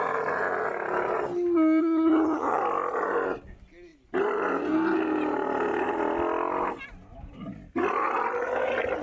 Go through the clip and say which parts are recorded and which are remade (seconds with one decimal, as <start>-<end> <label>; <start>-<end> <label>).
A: 0.0-1.8 recorded; 1.8-2.6 remade; 2.6-9.0 recorded